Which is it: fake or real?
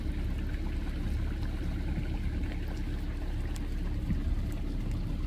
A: real